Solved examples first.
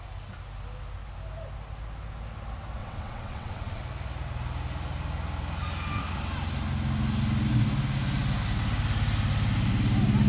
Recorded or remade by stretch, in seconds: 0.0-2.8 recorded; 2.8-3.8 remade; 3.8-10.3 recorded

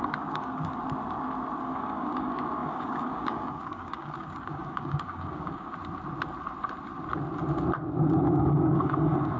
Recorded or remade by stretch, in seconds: 0.0-0.8 remade; 0.8-1.6 recorded; 1.6-5.7 remade; 5.7-8.3 recorded; 8.3-9.4 remade

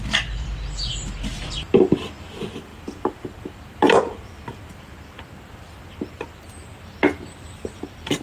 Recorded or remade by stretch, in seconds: 0.0-2.7 recorded; 2.7-4.7 remade; 4.7-8.2 recorded